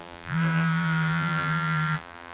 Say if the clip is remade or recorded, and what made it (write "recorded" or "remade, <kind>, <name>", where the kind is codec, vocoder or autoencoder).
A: remade, vocoder, BigVGAN v2